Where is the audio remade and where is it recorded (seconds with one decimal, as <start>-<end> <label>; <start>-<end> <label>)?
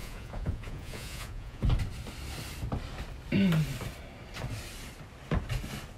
0.0-1.6 remade; 1.6-6.0 recorded